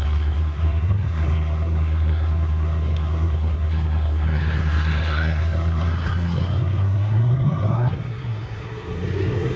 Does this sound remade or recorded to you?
remade